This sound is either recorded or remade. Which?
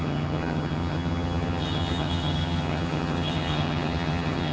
remade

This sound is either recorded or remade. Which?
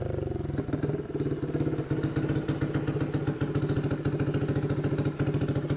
recorded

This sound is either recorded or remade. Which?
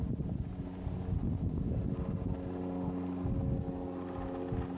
recorded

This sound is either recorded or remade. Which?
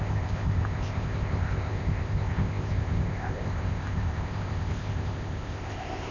remade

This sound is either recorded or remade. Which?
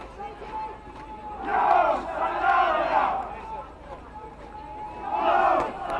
recorded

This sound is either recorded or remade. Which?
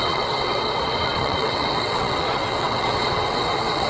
remade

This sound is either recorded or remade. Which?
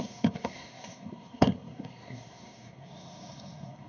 remade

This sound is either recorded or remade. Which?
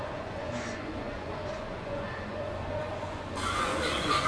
remade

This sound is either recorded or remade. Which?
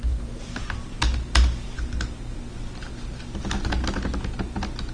recorded